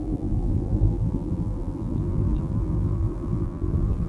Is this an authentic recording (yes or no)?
no